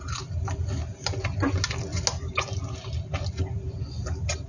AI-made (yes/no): no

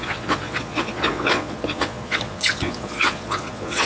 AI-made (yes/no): yes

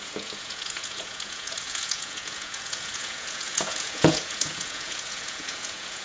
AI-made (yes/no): yes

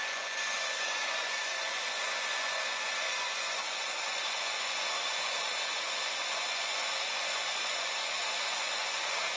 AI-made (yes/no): yes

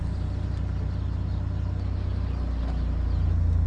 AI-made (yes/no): no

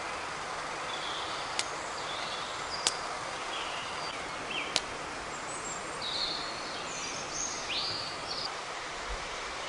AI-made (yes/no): no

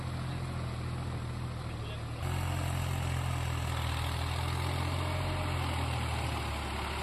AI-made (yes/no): no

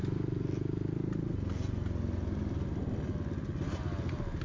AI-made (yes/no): no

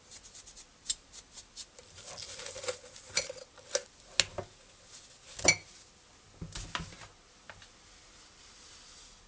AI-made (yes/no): no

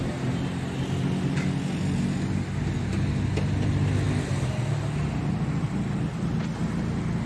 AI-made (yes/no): no